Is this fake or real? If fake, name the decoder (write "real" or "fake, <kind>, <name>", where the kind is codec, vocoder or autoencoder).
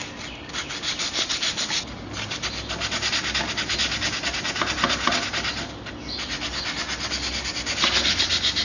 real